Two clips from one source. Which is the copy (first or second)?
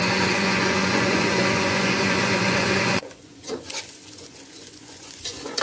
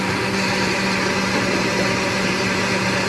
first